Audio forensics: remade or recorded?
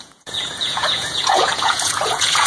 remade